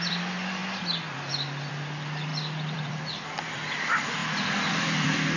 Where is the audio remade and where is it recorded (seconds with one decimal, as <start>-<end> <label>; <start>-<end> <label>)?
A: 0.0-0.6 remade; 0.6-1.7 recorded; 1.7-4.2 remade; 4.2-4.7 recorded; 4.7-5.4 remade